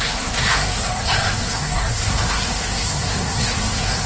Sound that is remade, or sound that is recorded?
remade